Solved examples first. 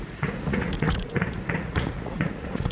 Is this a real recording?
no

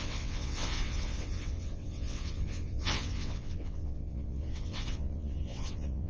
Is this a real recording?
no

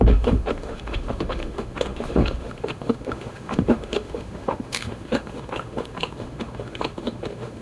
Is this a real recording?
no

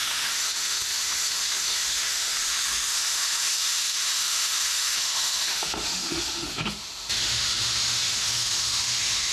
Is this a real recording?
no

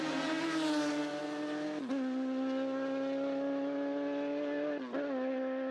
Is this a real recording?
yes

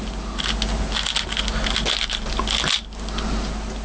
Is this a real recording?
yes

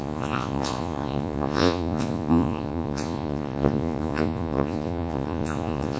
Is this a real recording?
no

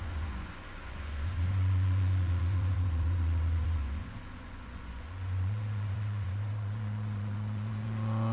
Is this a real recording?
no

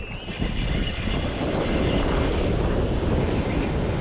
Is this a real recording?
yes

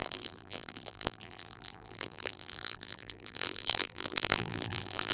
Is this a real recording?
no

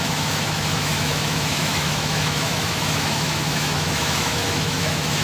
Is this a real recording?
no